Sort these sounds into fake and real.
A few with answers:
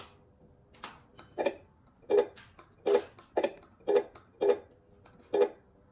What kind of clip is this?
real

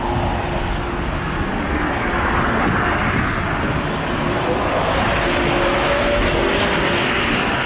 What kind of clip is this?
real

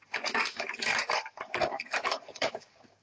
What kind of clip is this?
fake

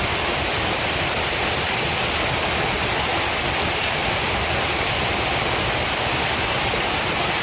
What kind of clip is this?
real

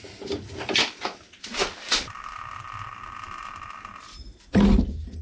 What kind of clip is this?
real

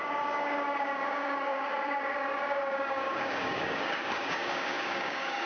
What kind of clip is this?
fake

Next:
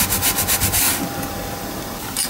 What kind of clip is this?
real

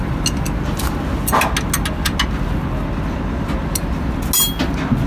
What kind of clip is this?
real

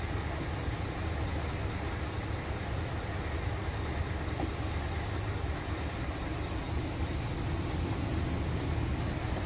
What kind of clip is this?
real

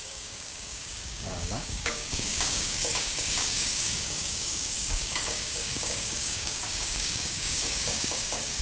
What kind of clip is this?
fake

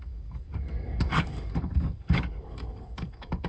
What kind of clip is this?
fake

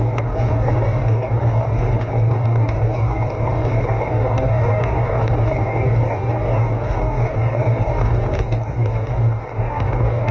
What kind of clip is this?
fake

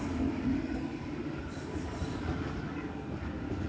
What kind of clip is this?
fake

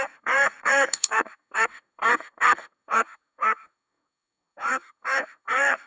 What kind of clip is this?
fake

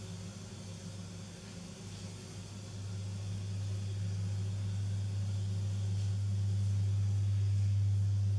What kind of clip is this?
real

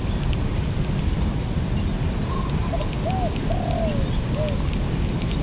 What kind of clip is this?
real